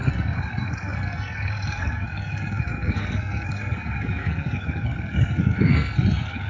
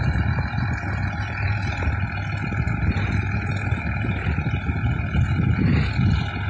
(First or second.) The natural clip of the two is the second